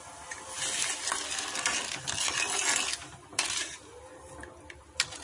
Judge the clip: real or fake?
real